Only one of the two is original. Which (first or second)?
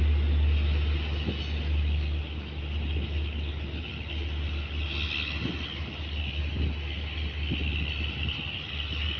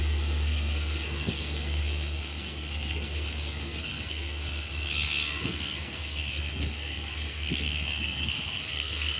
first